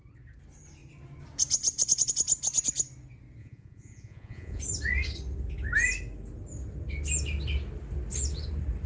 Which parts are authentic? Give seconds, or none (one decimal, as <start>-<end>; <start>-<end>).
0.0-3.4; 4.6-8.9